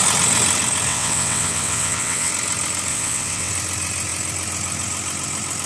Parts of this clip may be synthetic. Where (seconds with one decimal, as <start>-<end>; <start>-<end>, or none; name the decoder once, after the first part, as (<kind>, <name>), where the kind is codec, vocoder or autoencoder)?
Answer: 0.9-2.3 (vocoder, WaveNeXt); 2.9-3.5